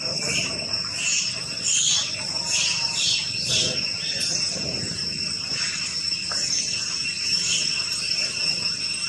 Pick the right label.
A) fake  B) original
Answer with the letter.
A